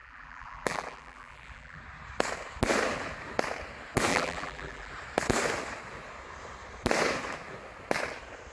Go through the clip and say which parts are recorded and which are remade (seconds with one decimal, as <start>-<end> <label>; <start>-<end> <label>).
0.0-1.8 remade; 1.8-4.1 recorded; 4.1-4.9 remade; 4.9-8.5 recorded